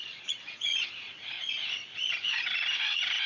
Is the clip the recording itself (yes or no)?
no